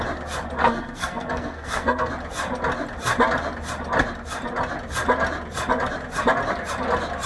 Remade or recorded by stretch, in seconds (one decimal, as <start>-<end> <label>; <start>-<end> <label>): 0.0-0.6 recorded; 0.6-2.1 remade; 2.1-7.3 recorded